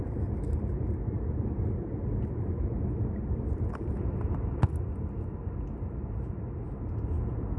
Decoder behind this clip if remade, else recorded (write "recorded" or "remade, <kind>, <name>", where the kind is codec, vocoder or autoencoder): recorded